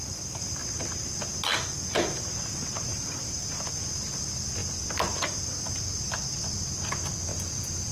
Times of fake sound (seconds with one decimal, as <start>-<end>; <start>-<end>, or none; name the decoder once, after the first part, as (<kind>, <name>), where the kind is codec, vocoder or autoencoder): 2.9-3.7 (vocoder, BigVGAN v2); 7.3-7.9